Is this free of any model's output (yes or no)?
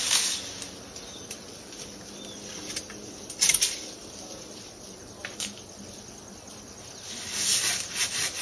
yes